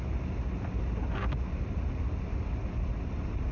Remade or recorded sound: recorded